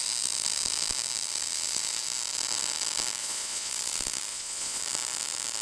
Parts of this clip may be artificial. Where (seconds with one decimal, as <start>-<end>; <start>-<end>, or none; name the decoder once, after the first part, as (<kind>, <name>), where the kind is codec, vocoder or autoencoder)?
3.2-3.7 (vocoder, Vocos); 4.3-4.8